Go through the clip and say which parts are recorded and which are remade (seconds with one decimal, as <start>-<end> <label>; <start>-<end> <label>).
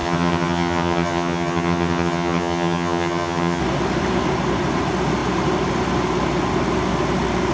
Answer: 0.0-3.6 remade; 3.6-7.5 recorded